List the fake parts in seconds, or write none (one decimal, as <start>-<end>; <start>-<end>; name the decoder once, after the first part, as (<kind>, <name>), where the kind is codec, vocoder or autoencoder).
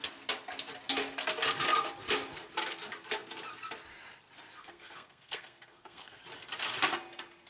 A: 4.6-6.2 (codec, SNAC)